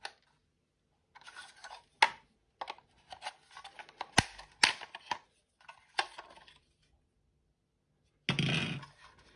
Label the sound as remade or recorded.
recorded